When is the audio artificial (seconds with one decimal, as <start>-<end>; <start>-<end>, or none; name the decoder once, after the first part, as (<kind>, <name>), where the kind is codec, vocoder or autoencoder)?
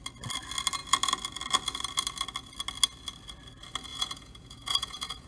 3.9-5.3 (vocoder, Vocos)